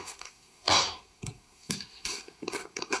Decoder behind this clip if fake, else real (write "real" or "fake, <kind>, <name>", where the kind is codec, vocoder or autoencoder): fake, codec, SNAC